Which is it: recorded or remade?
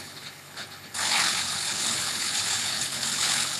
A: remade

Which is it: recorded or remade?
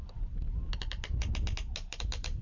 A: recorded